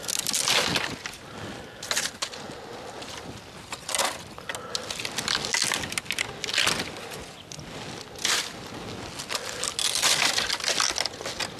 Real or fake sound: real